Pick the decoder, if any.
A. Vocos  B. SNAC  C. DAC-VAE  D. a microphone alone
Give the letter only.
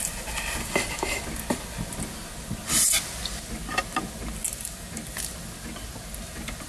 D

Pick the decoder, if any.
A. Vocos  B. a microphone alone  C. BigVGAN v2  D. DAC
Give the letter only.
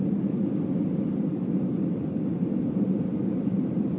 B